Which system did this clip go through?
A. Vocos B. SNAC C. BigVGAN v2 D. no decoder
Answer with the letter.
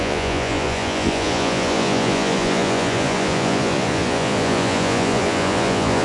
A